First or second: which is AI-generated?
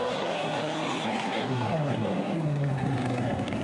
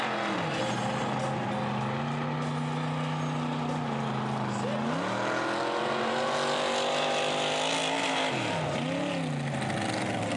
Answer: first